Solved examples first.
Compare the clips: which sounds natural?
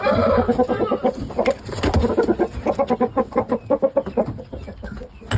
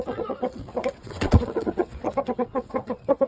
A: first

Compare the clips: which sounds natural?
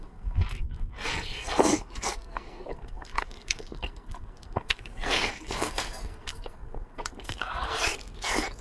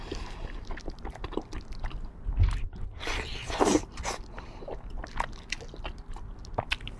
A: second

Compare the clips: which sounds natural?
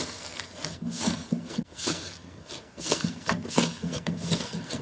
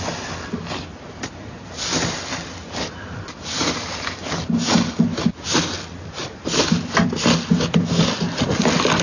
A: second